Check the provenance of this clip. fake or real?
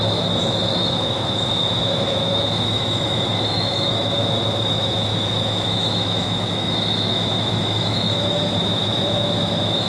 fake